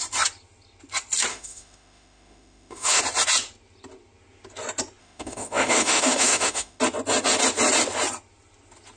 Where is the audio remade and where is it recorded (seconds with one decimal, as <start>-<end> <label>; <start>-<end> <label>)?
0.0-1.3 recorded; 1.3-3.0 remade; 3.0-5.0 recorded; 5.0-6.8 remade; 6.8-9.0 recorded